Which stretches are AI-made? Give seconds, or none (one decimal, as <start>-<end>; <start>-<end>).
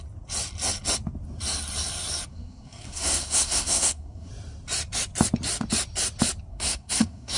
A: 2.3-4.3; 6.5-7.4